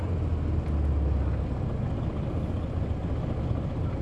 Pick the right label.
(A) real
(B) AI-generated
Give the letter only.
A